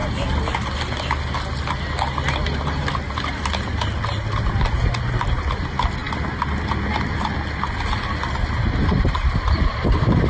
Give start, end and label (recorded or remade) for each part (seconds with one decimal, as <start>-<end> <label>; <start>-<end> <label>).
0.0-10.3 recorded